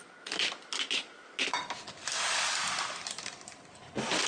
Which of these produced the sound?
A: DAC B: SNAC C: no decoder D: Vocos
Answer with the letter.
C